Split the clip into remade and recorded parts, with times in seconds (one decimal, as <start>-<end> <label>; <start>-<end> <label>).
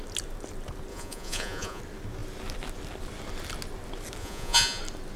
0.0-0.9 recorded; 0.9-1.8 remade; 1.8-4.2 recorded; 4.2-4.8 remade; 4.8-5.2 recorded